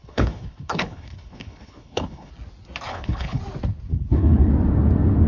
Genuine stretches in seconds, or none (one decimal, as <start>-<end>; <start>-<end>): 2.3-2.9; 3.4-3.9; 4.5-5.3